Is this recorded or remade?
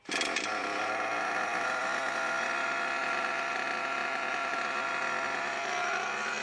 recorded